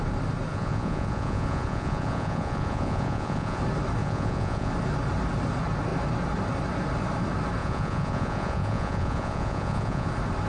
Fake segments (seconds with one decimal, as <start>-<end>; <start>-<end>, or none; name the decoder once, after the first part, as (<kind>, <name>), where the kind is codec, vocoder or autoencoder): 0.5-3.6 (vocoder, Vocos); 4.0-4.7; 7.6-10.1